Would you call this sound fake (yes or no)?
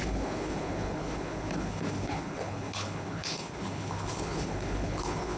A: yes